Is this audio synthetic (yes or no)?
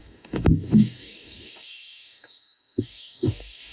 yes